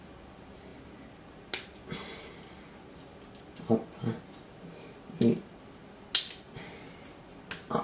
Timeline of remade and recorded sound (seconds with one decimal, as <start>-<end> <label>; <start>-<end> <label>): 0.0-7.8 recorded